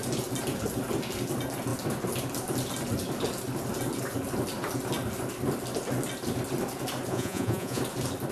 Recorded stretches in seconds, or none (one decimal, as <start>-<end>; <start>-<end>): 0.0-7.1; 7.8-8.3